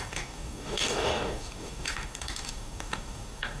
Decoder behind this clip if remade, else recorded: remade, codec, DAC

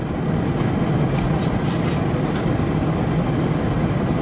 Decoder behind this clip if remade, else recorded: recorded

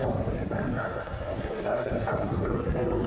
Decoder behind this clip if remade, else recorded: remade, codec, SNAC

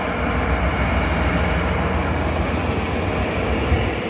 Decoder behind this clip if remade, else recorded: recorded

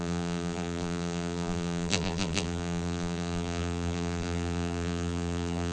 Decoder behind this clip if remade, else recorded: remade, vocoder, BigVGAN v2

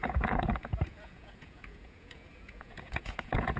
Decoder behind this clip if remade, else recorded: remade, vocoder, Vocos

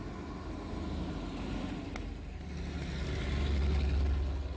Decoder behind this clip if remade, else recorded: recorded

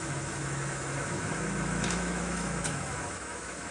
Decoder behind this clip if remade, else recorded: remade, autoencoder, DAC-VAE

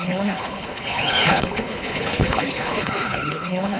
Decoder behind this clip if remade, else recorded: remade, codec, HILCodec